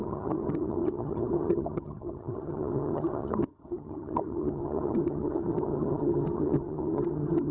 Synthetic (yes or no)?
yes